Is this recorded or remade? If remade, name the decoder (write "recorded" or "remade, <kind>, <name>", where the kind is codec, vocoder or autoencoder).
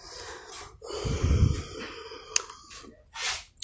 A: recorded